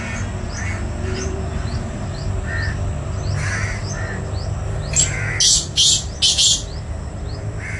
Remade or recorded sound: recorded